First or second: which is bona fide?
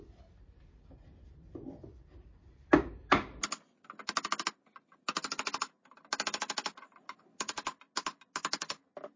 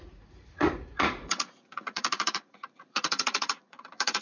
first